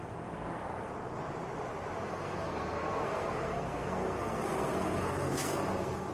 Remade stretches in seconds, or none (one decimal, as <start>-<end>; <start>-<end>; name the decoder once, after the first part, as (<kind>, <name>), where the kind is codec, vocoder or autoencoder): 0.0-0.9 (codec, SNAC); 2.1-6.1